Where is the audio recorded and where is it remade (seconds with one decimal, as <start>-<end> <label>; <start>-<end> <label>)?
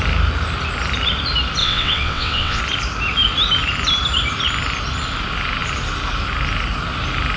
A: 0.0-1.6 recorded; 1.6-2.6 remade; 2.6-7.4 recorded